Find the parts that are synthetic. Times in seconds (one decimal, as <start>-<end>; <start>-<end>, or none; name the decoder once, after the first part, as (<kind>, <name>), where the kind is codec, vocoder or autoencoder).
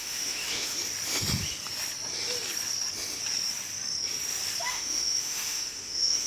0.0-0.8 (autoencoder, DAC-VAE); 4.6-6.3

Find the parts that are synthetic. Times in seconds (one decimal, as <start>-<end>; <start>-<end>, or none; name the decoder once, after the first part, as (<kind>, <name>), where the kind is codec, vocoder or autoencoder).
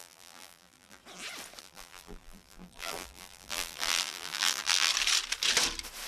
0.0-1.0 (vocoder, BigVGAN v2); 1.6-4.9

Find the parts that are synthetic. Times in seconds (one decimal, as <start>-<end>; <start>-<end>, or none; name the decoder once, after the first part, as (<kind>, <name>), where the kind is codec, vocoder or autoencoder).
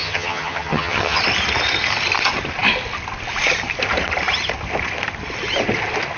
0.0-1.2 (vocoder, HiFi-GAN)